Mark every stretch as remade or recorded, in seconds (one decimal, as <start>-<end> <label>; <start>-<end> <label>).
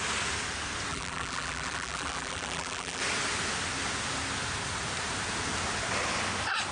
0.0-0.9 recorded; 0.9-3.0 remade; 3.0-6.7 recorded